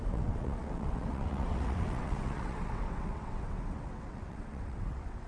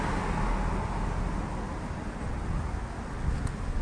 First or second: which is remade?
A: first